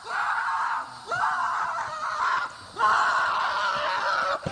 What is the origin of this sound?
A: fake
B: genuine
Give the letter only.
B